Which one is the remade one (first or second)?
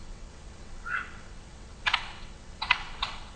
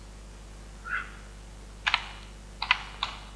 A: first